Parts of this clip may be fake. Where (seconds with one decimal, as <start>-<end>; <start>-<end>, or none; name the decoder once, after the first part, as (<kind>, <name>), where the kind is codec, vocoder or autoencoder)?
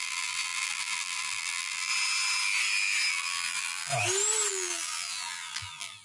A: 0.0-1.9 (vocoder, BigVGAN v2); 3.1-3.9; 4.5-6.0